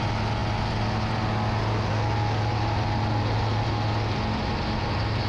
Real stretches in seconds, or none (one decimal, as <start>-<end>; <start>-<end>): 0.0-5.3